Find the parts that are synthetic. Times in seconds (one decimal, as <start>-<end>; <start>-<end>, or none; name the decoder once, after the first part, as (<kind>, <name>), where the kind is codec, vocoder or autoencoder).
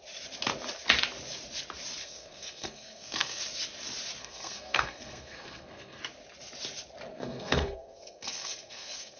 2.0-3.4 (codec, SNAC); 4.2-6.0; 7.1-9.2